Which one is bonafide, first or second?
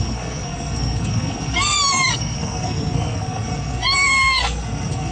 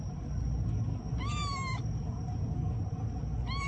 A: second